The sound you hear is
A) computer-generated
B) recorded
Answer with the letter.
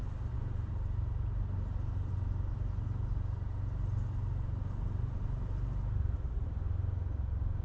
B